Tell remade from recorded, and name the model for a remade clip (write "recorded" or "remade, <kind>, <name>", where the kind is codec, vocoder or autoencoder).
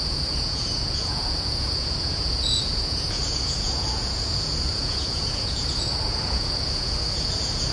remade, vocoder, Vocos